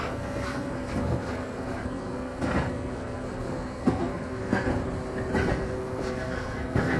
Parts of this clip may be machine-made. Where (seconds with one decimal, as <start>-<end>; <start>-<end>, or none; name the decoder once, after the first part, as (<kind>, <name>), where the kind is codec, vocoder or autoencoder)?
0.0-4.7 (codec, SNAC); 5.5-7.0